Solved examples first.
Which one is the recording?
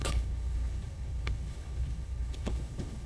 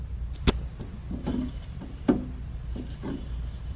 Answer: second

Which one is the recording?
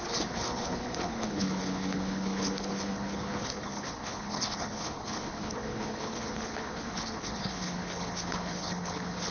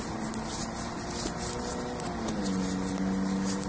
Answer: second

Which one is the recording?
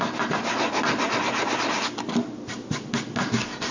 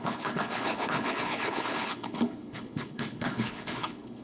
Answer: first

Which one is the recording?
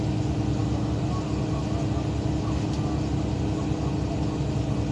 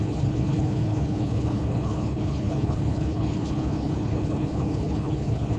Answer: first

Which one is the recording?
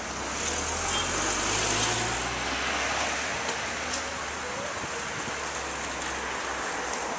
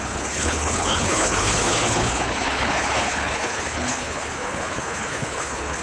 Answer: first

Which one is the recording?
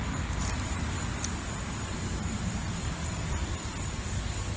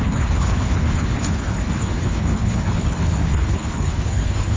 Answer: first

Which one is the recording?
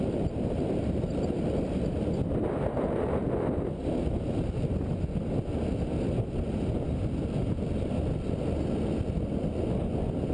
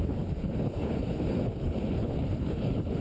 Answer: first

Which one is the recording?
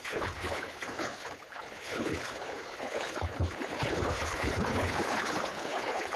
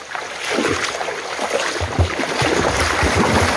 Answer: second